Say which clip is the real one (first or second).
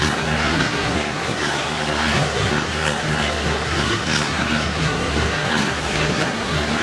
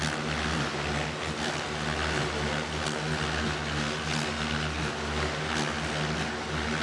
second